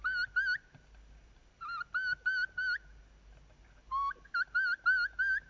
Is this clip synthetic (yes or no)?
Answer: no